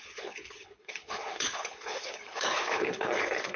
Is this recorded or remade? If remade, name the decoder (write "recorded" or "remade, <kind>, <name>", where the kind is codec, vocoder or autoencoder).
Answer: remade, codec, HILCodec